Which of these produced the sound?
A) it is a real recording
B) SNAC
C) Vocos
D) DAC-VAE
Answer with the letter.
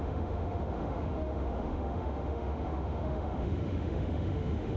D